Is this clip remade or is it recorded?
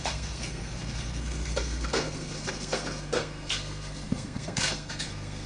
remade